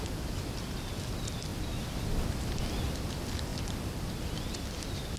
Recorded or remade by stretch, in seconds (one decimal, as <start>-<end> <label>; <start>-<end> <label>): 0.0-1.5 recorded; 1.5-2.6 remade; 2.6-3.5 recorded; 3.5-4.6 remade; 4.6-5.2 recorded

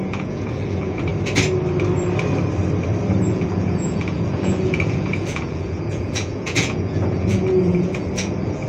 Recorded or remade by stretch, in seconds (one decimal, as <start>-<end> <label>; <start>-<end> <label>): 0.0-1.1 remade; 1.1-3.3 recorded; 3.3-8.7 remade

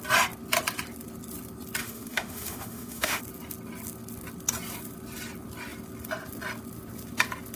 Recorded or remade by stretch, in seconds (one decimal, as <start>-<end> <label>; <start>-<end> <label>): 0.0-1.8 recorded; 1.8-3.2 remade; 3.2-7.6 recorded